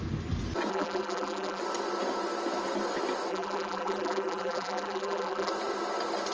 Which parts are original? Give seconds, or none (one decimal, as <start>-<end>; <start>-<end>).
0.0-0.7; 1.6-3.3; 5.5-6.3